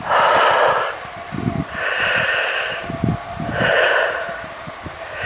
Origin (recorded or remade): recorded